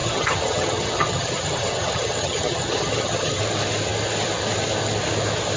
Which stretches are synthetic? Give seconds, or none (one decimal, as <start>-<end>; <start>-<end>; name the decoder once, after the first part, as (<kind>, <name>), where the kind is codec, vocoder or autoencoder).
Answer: 0.0-3.4 (vocoder, HiFi-GAN)